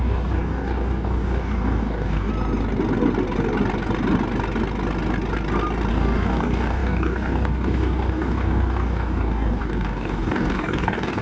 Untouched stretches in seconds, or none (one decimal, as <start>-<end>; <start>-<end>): 2.3-5.9